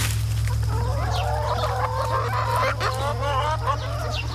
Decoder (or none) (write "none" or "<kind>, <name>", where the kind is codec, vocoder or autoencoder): none